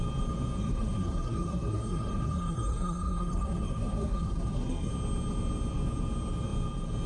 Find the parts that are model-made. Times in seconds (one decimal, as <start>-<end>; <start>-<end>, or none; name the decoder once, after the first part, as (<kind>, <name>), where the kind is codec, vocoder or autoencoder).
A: 0.6-4.9 (codec, SNAC)